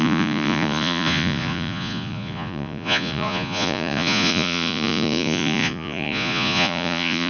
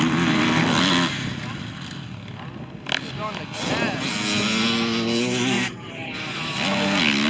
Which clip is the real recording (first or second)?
second